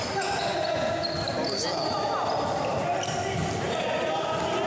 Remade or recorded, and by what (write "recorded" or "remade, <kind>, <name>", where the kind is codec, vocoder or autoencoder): recorded